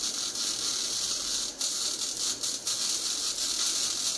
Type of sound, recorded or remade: recorded